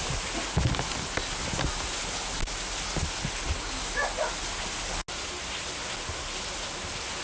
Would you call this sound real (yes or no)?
yes